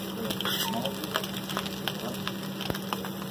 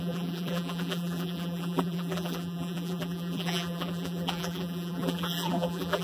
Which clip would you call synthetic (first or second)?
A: second